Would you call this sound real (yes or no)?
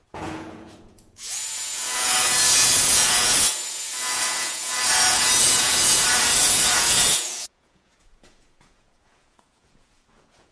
no